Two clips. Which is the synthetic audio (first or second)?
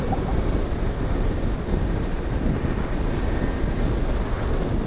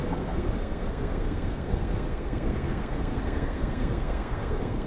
second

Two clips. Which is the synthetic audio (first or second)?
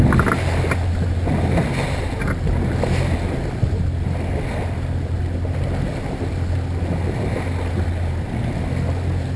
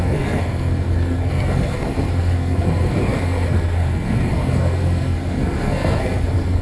second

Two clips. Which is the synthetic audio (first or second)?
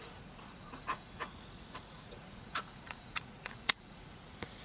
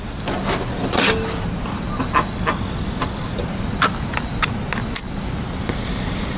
first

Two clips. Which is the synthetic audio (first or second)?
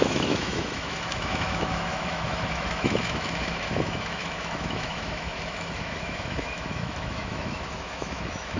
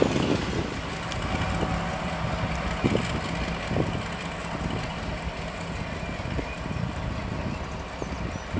first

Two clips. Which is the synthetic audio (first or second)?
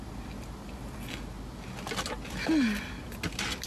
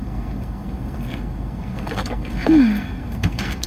second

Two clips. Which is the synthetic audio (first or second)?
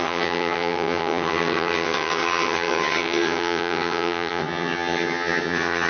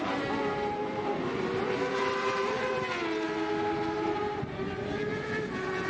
first